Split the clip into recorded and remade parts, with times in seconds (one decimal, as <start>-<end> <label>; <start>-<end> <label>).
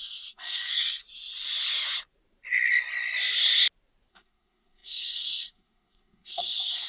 0.0-1.0 remade; 1.0-4.1 recorded; 4.1-6.9 remade